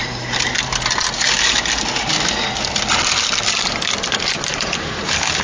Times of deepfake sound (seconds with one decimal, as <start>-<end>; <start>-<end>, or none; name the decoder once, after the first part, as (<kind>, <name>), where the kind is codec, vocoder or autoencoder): 0.0-0.5 (vocoder, BigVGAN v2)